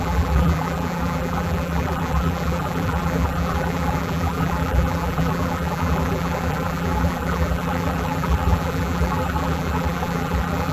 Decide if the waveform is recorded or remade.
remade